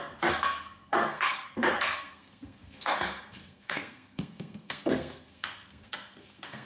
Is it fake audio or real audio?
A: fake